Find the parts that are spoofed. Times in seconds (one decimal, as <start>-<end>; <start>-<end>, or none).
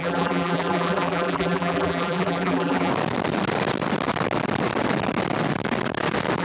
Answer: 0.0-2.9